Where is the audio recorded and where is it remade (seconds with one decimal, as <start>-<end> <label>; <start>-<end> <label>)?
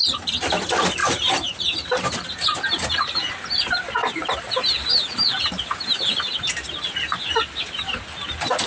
0.0-1.0 recorded; 1.0-3.3 remade; 3.3-4.0 recorded; 4.0-8.0 remade; 8.0-8.7 recorded